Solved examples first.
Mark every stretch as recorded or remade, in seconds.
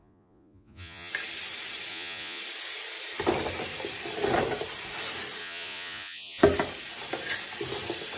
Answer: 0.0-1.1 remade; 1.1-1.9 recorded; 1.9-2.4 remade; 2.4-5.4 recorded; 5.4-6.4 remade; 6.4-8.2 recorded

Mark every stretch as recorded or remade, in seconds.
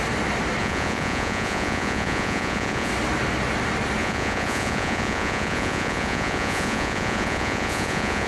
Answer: 0.0-0.6 recorded; 0.6-2.9 remade; 2.9-4.0 recorded; 4.0-8.3 remade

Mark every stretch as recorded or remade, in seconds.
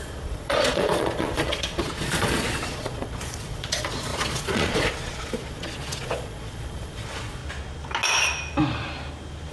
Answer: 0.0-7.4 remade; 7.4-9.5 recorded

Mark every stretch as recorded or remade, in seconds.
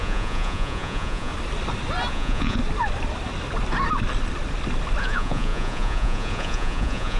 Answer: 0.0-1.3 remade; 1.3-2.1 recorded; 2.1-2.6 remade; 2.6-5.0 recorded; 5.0-7.2 remade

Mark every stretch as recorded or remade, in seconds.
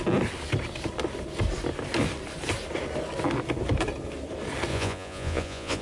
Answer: 0.0-4.7 recorded; 4.7-5.8 remade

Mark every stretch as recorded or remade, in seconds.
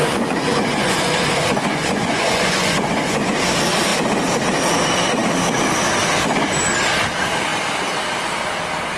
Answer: 0.0-3.4 remade; 3.4-9.0 recorded